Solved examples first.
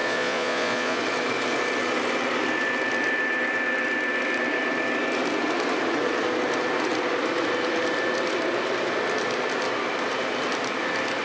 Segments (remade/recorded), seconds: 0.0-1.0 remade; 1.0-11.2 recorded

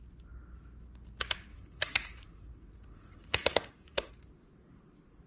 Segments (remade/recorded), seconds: 0.0-1.5 recorded; 1.5-4.1 remade; 4.1-5.3 recorded

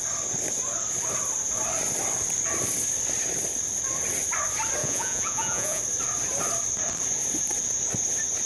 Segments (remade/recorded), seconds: 0.0-4.8 recorded; 4.8-5.8 remade; 5.8-8.5 recorded